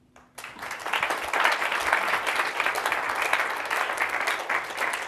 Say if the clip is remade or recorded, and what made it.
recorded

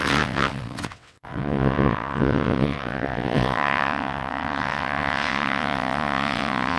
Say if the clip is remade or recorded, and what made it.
remade, vocoder, WaveNeXt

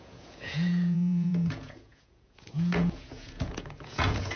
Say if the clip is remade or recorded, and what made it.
remade, vocoder, Vocos